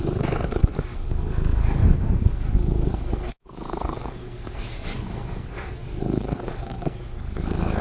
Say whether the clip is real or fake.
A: fake